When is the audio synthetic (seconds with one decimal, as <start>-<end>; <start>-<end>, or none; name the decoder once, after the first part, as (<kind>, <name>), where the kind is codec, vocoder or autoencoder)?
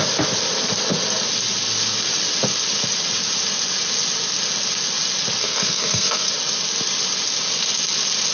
5.4-6.3 (codec, SNAC)